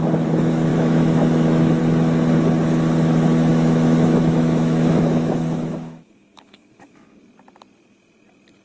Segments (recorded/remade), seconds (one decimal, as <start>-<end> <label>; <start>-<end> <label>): 0.0-0.7 recorded; 0.7-1.8 remade; 1.8-3.5 recorded; 3.5-7.2 remade; 7.2-8.6 recorded